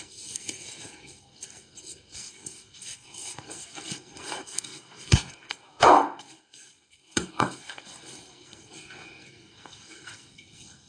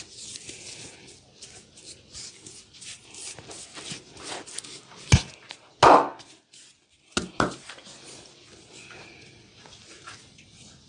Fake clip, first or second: first